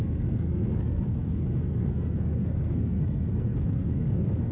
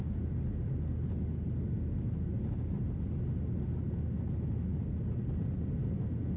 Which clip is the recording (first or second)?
second